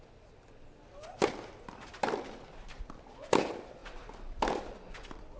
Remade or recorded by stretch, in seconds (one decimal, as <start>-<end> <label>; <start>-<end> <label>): 0.0-5.4 recorded

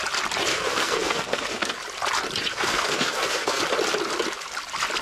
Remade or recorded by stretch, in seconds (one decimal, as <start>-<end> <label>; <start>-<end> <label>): 0.0-0.5 recorded; 0.5-1.8 remade; 1.8-2.5 recorded; 2.5-3.6 remade; 3.6-5.0 recorded

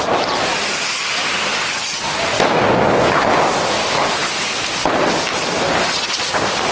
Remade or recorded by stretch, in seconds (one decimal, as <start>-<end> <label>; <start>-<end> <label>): 0.0-6.7 recorded